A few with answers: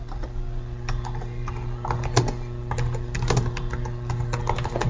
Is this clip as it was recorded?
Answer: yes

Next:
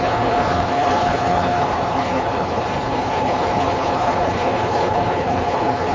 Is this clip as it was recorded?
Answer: no